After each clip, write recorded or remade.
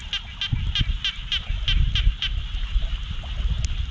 recorded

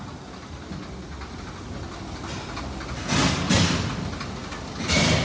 recorded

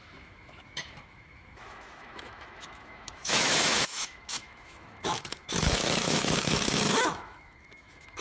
remade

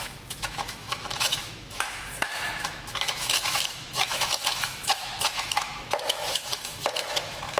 remade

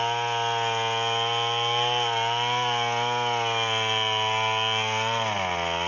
recorded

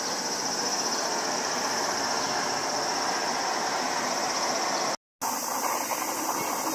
recorded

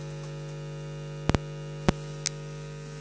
recorded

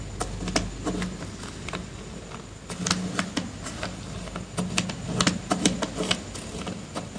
recorded